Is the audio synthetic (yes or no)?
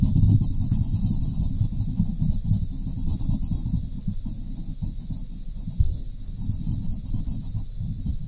no